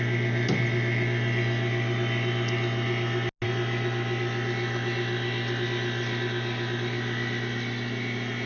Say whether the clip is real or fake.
real